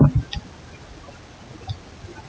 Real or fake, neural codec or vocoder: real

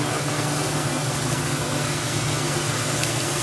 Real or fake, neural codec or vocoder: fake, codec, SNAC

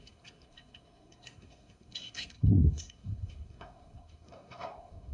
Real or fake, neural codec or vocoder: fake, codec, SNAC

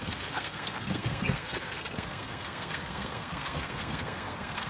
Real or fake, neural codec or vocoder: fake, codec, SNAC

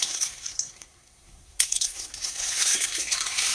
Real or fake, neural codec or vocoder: fake, codec, SNAC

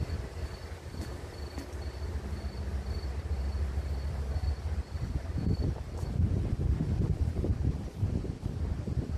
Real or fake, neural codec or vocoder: real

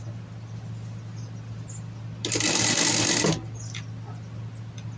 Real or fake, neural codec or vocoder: real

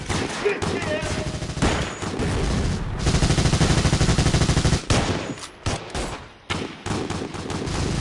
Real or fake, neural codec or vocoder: real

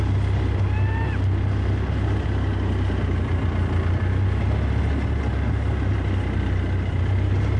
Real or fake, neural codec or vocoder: real